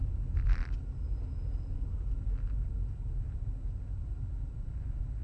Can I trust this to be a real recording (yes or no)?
yes